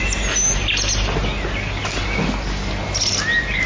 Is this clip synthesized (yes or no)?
no